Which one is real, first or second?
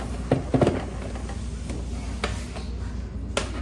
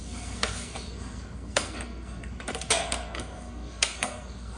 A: first